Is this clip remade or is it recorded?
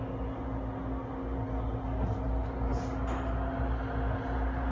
recorded